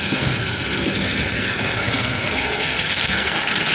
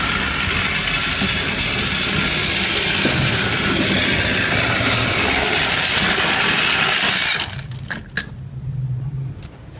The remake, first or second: first